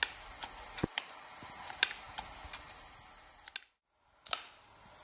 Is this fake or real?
real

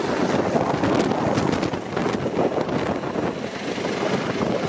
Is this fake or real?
real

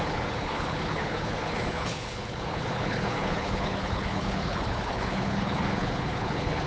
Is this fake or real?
fake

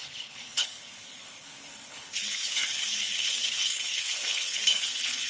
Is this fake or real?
fake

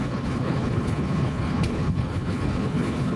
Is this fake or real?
fake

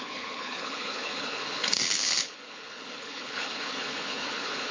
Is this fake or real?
fake